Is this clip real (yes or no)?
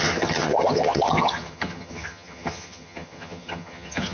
no